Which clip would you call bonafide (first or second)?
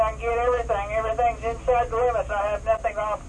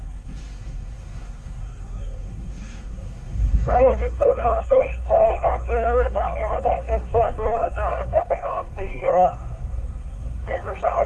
first